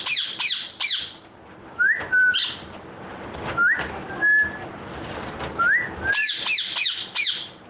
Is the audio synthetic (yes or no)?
no